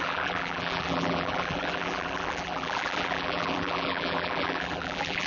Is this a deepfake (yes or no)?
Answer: yes